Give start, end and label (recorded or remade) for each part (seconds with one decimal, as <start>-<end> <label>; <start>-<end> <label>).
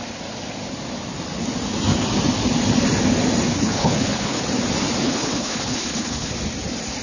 0.0-3.5 recorded; 3.5-4.4 remade; 4.4-5.0 recorded; 5.0-6.3 remade; 6.3-7.0 recorded